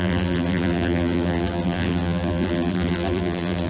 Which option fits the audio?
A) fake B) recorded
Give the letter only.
A